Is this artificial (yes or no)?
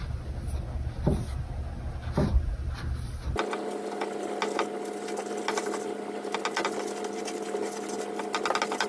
no